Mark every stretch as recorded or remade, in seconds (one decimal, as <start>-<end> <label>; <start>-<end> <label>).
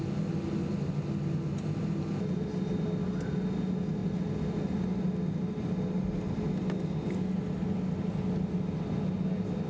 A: 0.0-9.7 recorded